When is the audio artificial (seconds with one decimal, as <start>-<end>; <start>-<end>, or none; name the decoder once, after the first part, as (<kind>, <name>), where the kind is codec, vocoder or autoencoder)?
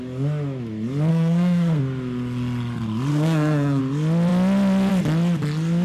1.1-1.8 (codec, SNAC); 3.1-3.8